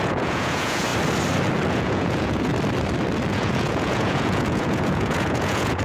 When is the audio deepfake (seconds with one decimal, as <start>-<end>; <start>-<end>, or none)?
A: 0.0-0.9; 1.7-2.5; 3.3-5.8